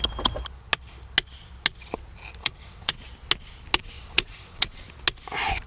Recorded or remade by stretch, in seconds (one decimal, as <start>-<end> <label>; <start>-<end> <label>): 0.0-2.4 recorded; 2.4-3.0 remade; 3.0-3.8 recorded; 3.8-4.8 remade; 4.8-5.7 recorded